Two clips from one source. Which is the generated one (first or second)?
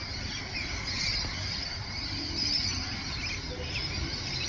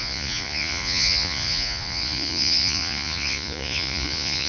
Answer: second